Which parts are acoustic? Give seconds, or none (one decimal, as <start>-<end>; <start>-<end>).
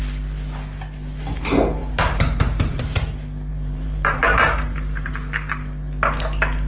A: 0.0-1.8; 2.8-3.5; 5.1-6.7